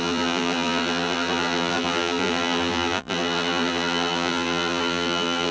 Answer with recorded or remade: remade